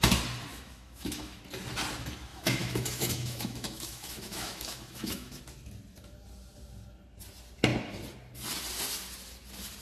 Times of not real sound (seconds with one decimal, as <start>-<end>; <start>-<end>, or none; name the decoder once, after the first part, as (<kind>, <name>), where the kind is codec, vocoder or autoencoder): 0.5-1.4 (autoencoder, DAC-VAE); 2.3-5.4